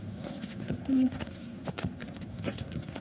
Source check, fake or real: fake